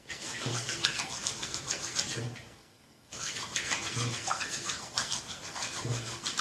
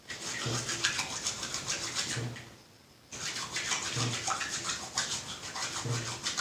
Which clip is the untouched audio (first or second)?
second